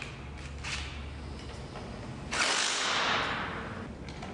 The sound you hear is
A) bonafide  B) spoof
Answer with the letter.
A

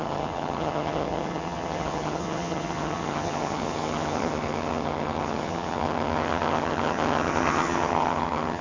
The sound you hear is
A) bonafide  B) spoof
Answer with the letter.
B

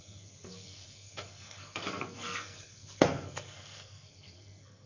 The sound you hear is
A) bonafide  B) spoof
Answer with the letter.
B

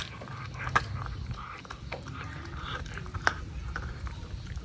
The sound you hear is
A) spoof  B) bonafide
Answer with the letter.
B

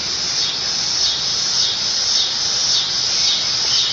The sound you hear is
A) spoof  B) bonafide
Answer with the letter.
B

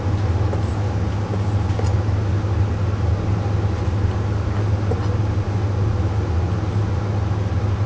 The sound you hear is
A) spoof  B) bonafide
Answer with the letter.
B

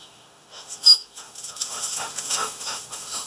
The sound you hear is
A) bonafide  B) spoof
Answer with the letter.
B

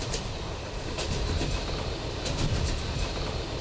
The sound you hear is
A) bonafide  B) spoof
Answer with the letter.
A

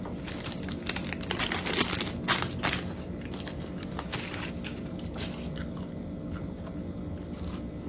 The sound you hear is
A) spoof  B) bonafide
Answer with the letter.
B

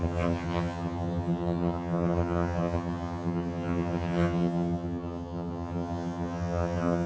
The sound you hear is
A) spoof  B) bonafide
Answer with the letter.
A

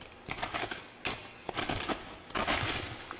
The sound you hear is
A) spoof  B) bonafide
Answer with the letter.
B